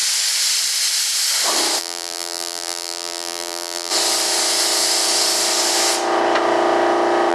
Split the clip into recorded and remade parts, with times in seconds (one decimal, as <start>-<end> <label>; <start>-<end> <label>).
0.0-1.8 recorded; 1.8-3.9 remade; 3.9-7.3 recorded